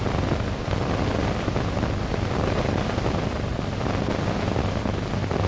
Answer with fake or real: real